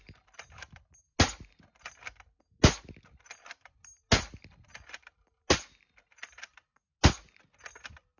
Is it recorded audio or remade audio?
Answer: recorded